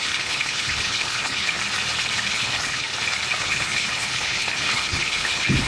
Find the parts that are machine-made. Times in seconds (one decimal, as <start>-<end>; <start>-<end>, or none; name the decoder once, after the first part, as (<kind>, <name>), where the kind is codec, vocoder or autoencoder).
0.0-1.6 (codec, HILCodec); 2.3-2.9; 3.4-5.7